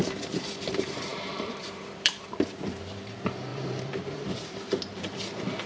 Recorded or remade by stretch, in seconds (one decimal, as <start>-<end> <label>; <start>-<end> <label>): 0.0-0.6 remade; 0.6-1.1 recorded; 1.1-2.1 remade; 2.1-3.5 recorded; 3.5-5.7 remade